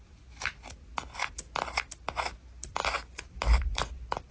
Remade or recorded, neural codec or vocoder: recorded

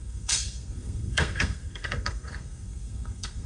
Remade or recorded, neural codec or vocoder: remade, codec, SNAC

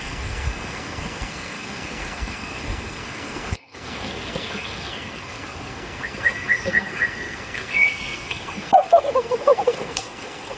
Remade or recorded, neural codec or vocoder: remade, codec, SNAC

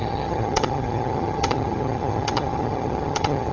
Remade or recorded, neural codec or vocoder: remade, vocoder, HiFi-GAN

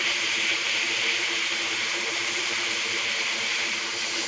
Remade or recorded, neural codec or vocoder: remade, vocoder, BigVGAN v2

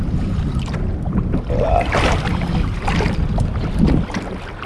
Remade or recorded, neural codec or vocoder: recorded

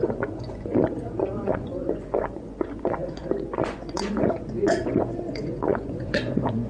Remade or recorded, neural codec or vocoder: remade, vocoder, Vocos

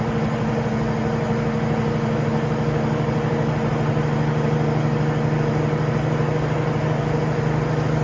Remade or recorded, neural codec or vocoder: recorded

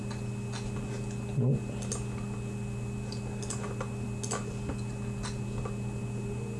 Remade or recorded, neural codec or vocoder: recorded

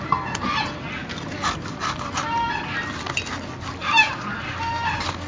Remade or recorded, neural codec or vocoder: recorded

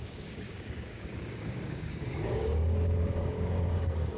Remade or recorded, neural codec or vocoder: remade, codec, DAC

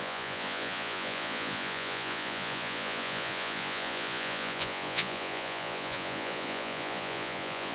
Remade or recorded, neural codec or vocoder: remade, vocoder, Vocos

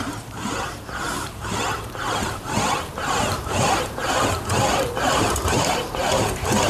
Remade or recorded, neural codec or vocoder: remade, vocoder, BigVGAN v2